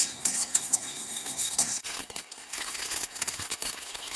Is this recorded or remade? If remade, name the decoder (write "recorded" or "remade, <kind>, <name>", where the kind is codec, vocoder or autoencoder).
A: remade, codec, SNAC